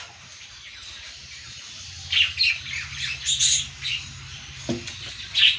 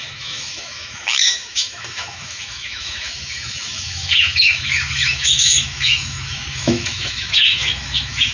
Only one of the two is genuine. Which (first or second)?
first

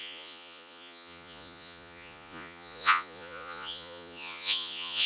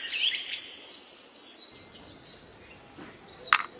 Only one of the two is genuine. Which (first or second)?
second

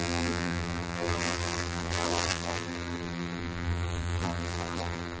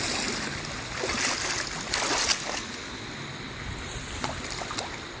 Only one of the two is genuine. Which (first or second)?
second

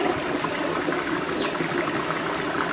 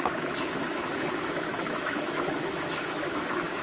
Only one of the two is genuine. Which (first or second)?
first